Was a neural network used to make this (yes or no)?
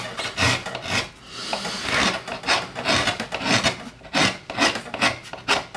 no